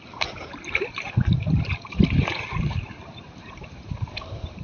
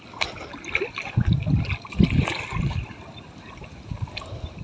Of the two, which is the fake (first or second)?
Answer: first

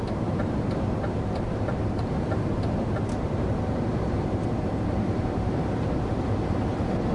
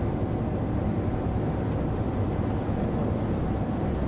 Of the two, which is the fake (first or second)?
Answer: first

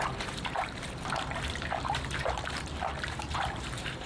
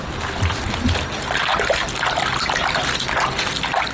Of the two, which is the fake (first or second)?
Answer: first